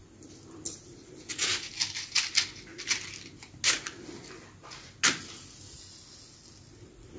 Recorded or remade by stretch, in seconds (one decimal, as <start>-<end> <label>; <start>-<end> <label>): 0.0-7.2 recorded

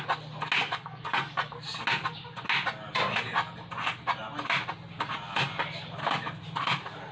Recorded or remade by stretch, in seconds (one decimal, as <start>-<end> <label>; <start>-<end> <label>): 0.0-0.6 recorded; 0.6-1.5 remade; 1.5-7.1 recorded